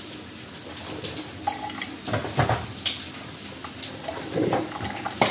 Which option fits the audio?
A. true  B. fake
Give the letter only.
A